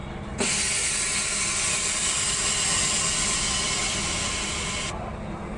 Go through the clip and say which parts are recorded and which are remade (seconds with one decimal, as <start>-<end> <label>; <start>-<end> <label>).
0.0-5.6 recorded